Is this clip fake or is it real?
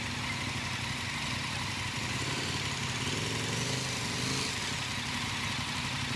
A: real